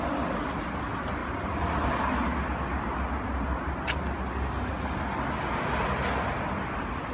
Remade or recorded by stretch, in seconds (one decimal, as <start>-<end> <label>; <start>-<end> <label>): 0.0-7.1 recorded